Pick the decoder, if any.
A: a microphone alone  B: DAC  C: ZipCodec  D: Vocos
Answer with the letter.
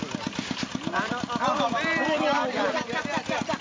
A